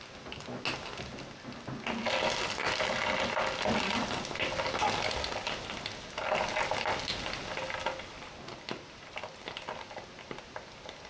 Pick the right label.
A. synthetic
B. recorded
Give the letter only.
B